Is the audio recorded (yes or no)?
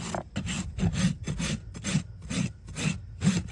yes